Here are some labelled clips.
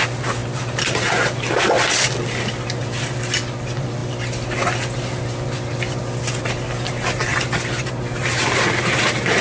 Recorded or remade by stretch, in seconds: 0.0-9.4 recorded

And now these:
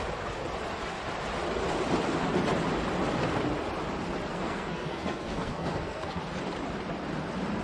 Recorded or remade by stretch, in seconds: 0.0-4.3 recorded; 4.3-6.2 remade; 6.2-7.6 recorded

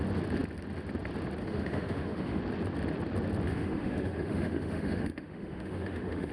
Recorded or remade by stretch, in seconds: 0.0-1.4 recorded; 1.4-2.4 remade; 2.4-3.5 recorded; 3.5-6.3 remade

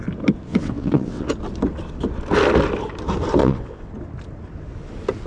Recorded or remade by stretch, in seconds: 0.0-0.5 recorded; 0.5-1.3 remade; 1.3-3.4 recorded; 3.4-3.9 remade; 3.9-5.3 recorded